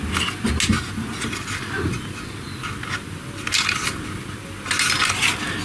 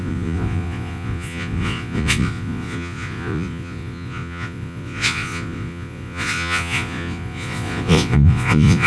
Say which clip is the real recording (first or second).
first